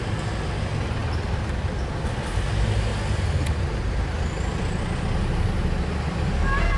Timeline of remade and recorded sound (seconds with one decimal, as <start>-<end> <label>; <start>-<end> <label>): 0.0-6.8 recorded